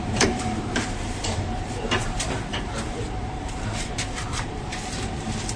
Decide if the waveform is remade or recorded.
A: remade